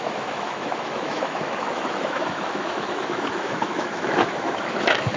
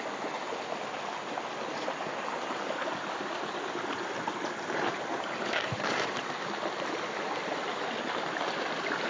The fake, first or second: first